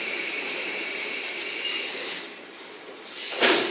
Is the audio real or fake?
fake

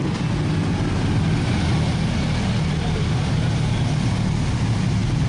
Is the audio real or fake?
real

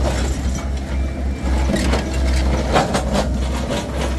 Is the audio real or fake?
real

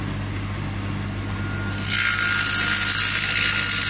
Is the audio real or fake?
real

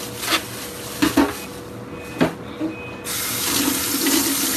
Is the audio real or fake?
real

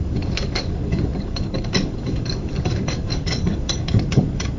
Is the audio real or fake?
fake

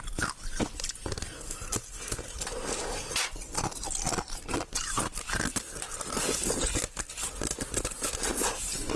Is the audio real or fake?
real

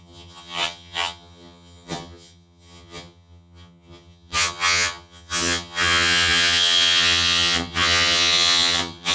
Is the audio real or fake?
fake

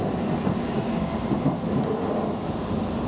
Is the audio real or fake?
real